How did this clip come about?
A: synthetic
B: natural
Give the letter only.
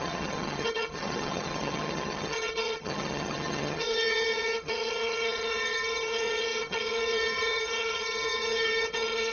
A